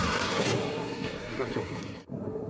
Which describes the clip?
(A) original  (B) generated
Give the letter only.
B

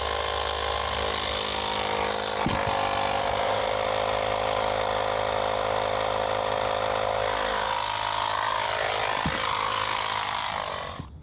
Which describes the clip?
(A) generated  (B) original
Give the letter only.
B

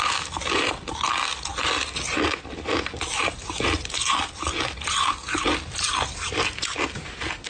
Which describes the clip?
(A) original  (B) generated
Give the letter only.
A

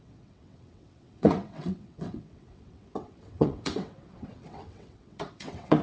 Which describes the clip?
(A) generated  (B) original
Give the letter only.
A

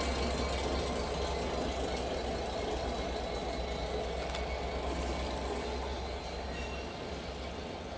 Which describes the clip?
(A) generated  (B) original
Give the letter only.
B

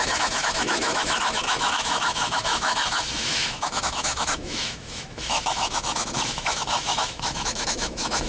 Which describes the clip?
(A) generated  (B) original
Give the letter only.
A